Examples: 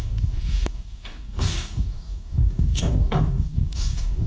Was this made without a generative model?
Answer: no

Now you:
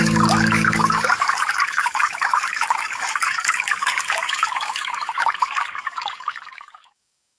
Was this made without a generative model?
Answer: no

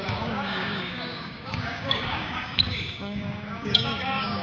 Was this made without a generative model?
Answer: no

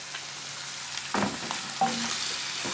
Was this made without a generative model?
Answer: yes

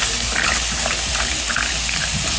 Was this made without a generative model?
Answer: yes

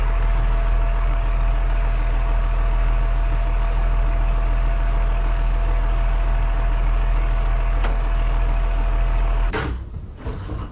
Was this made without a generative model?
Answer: no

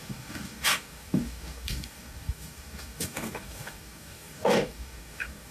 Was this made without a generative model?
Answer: no